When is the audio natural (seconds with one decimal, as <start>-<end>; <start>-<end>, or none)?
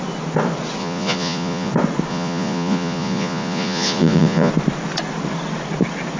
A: 0.0-0.8; 1.7-2.1; 4.5-6.2